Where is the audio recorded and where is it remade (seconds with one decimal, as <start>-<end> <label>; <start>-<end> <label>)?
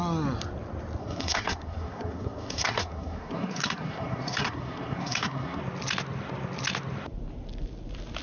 0.0-1.0 recorded; 1.0-5.6 remade; 5.6-8.2 recorded